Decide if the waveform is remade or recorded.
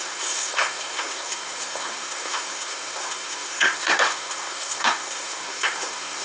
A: remade